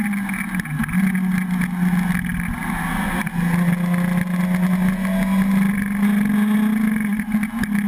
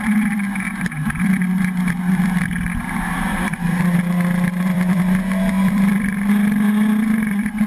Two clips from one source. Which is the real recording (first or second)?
first